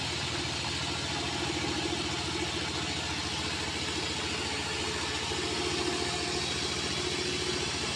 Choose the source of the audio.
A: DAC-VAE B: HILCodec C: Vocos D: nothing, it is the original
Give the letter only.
D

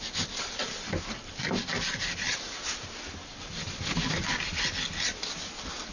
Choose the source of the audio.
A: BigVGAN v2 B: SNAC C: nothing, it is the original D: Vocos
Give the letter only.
A